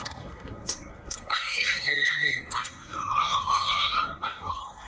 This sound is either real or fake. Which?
fake